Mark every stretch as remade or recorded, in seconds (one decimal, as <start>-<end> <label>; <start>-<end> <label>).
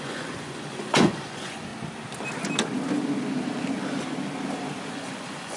0.0-1.7 remade; 1.7-4.9 recorded; 4.9-5.6 remade